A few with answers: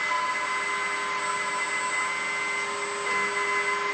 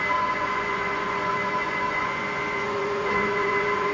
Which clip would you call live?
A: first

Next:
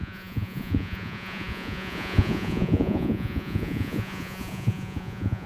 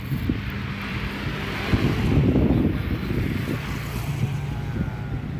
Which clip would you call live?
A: second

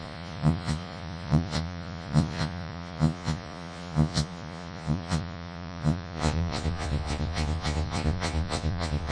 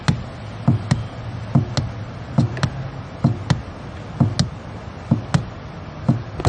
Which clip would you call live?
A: second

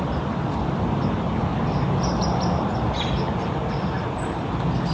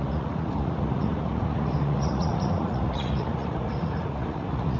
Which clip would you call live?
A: first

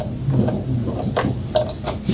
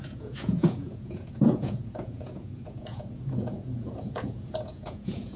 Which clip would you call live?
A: first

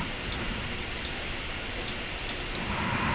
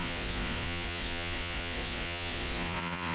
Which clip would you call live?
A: first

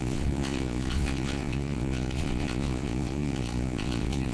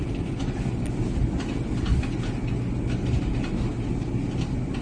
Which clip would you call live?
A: second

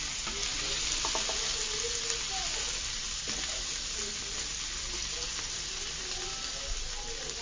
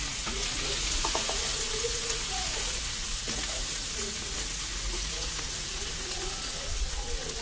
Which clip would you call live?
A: first